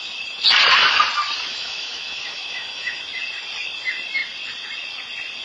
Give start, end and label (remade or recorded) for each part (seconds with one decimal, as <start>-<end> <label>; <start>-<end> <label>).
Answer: 0.0-1.5 recorded; 1.5-3.0 remade; 3.0-5.4 recorded